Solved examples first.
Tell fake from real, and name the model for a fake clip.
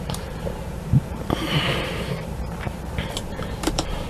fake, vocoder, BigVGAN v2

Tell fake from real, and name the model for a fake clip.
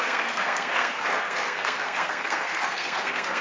fake, codec, SNAC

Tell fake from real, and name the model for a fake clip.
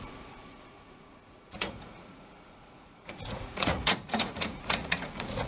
fake, vocoder, Vocos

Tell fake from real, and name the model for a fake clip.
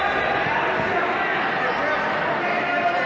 real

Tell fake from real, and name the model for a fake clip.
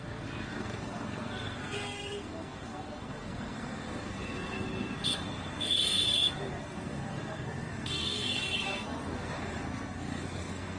fake, codec, SNAC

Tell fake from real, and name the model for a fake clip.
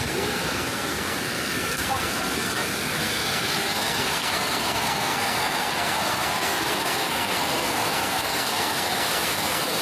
fake, codec, SNAC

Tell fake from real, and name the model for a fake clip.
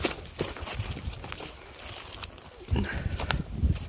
real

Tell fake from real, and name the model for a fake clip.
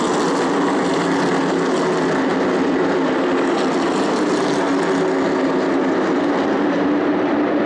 real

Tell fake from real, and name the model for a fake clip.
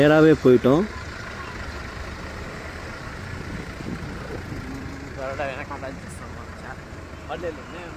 real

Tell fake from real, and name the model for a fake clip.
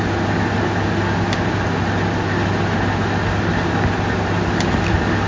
real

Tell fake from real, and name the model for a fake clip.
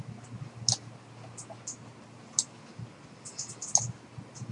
real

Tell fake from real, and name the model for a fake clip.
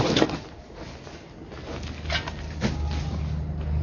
real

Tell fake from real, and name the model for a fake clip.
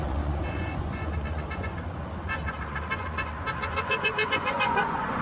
fake, vocoder, Vocos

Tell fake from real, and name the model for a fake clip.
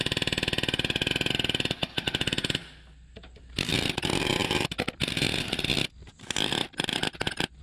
real